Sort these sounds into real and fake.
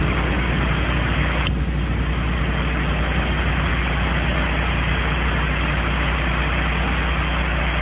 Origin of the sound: real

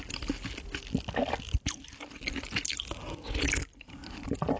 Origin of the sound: real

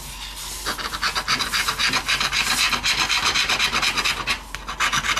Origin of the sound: real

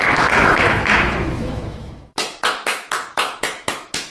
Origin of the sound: fake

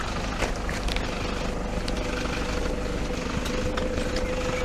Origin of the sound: real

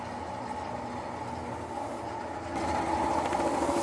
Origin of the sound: real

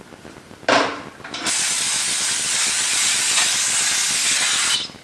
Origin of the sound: real